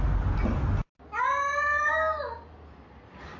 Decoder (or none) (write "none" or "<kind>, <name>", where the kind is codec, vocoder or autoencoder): none